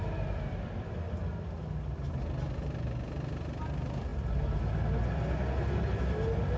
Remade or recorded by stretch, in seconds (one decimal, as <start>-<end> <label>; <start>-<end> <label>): 0.0-6.6 recorded